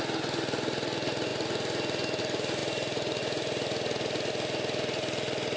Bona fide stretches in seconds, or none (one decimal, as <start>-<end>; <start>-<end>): 0.0-5.6